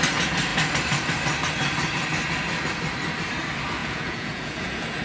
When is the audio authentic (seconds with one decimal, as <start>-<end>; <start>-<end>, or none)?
0.0-3.8